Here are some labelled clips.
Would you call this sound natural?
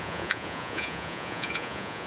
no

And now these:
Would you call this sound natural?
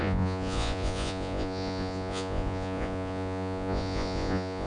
no